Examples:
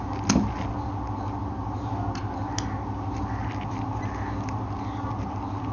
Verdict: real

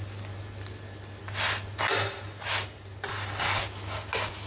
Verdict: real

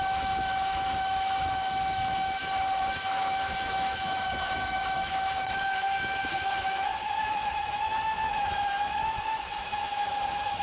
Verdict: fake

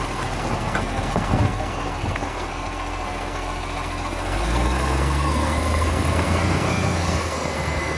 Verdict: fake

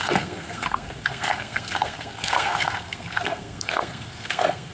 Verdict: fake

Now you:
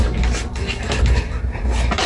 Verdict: real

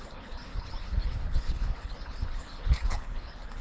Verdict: fake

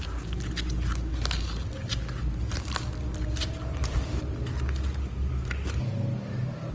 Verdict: real